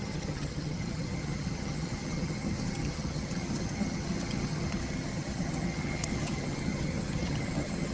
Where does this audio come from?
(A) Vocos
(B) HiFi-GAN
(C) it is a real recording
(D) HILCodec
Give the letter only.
B